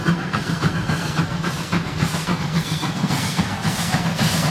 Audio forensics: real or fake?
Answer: fake